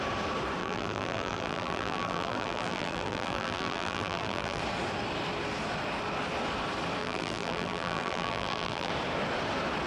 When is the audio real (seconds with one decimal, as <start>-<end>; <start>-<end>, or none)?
0.0-0.6; 4.6-7.0; 8.9-9.9